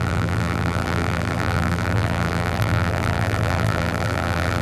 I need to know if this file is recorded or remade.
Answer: remade